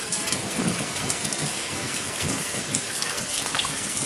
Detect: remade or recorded remade